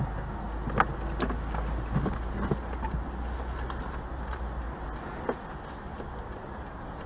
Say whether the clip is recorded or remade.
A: recorded